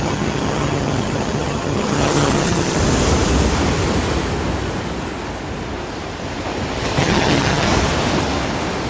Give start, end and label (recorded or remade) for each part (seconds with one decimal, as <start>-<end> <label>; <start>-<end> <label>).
0.0-2.8 remade; 2.8-7.0 recorded; 7.0-7.7 remade; 7.7-8.9 recorded